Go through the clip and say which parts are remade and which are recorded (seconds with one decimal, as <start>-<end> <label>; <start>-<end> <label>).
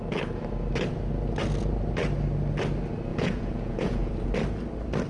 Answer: 0.0-3.1 recorded; 3.1-4.1 remade; 4.1-5.1 recorded